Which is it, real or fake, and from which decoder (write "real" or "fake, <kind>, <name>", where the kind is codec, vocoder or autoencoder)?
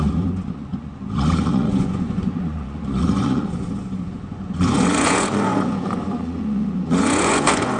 fake, vocoder, Vocos